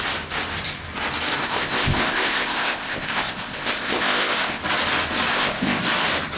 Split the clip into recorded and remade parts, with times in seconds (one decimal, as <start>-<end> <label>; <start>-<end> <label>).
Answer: 0.0-1.4 recorded; 1.4-4.6 remade; 4.6-5.3 recorded; 5.3-5.8 remade; 5.8-6.4 recorded